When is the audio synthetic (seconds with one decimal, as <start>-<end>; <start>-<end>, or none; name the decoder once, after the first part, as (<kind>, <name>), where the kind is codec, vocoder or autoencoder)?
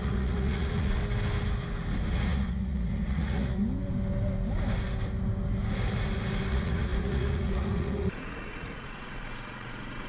0.0-1.0 (vocoder, Vocos); 2.1-3.6; 6.5-10.1